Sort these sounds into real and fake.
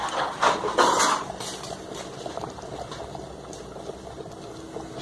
real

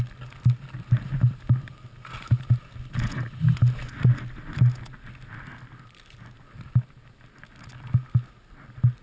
real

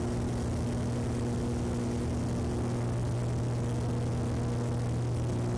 real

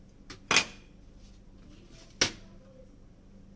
real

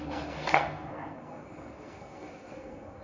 fake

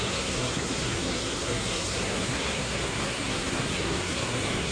fake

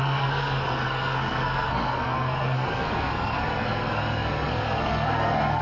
fake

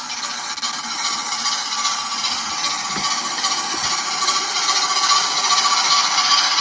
real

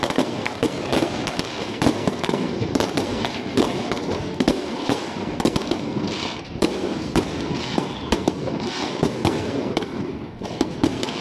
fake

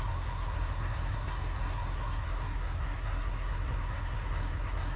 fake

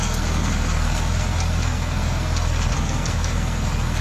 fake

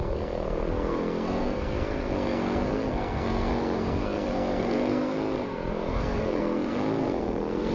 fake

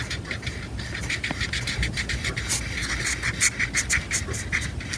real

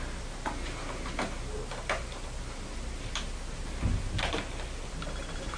real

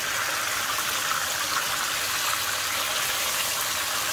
real